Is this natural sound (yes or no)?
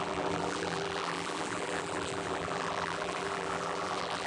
no